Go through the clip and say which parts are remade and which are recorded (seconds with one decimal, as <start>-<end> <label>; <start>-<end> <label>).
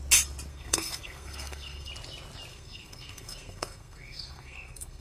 0.0-0.5 recorded; 0.5-1.9 remade; 1.9-2.5 recorded; 2.5-5.0 remade